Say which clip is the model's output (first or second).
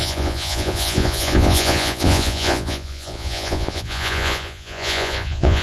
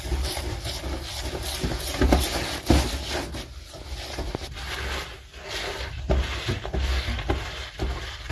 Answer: first